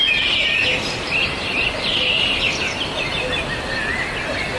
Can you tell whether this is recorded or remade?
recorded